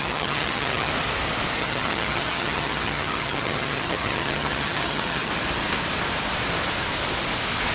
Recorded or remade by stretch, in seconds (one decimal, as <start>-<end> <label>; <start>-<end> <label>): 0.0-0.9 remade; 0.9-1.6 recorded; 1.6-5.3 remade; 5.3-7.7 recorded